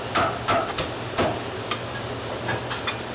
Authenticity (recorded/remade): recorded